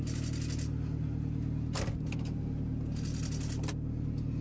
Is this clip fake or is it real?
real